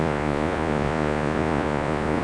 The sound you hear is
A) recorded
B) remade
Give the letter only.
B